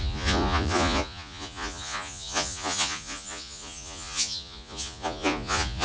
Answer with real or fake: fake